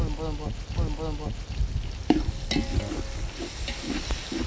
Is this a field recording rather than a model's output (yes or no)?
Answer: yes